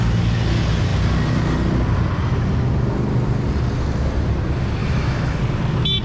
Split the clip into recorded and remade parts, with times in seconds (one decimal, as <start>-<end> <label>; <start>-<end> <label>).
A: 0.0-4.8 recorded; 4.8-5.4 remade; 5.4-6.0 recorded